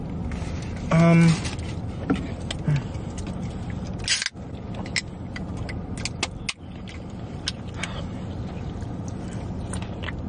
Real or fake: real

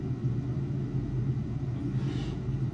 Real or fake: real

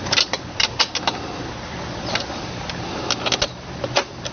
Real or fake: real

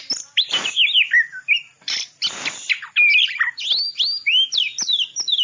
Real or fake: real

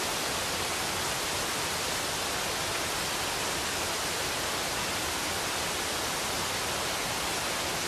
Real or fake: real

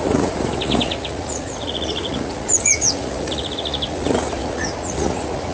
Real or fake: fake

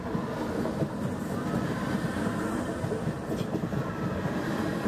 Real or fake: real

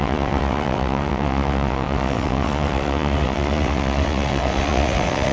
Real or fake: fake